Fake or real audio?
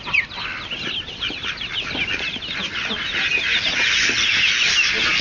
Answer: real